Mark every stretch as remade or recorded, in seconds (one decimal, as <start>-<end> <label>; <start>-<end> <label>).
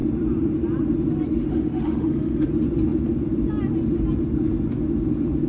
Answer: 0.0-1.4 recorded; 1.4-2.5 remade; 2.5-5.5 recorded